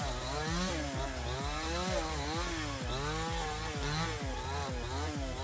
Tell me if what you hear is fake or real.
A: real